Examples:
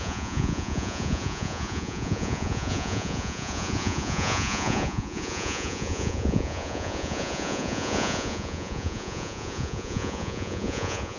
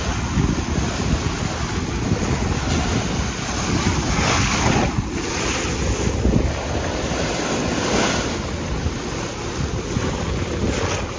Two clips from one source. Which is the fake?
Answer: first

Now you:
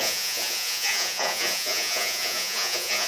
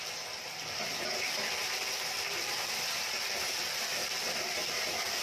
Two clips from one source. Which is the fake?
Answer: first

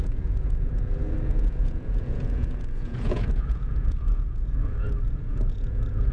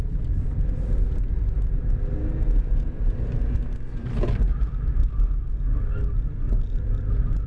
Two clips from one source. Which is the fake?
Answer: first